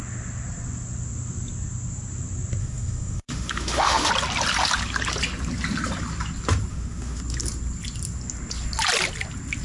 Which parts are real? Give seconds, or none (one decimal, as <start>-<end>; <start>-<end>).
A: 0.0-2.6; 4.1-6.7; 7.2-9.6